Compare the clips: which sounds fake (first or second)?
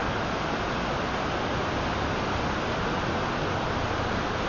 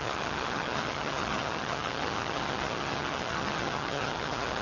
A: second